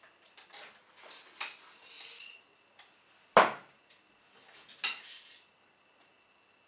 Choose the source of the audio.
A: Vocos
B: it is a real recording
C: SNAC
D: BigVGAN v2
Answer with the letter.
B